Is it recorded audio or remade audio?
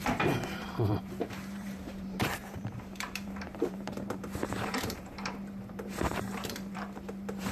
remade